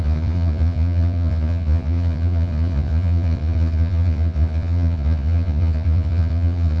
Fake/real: fake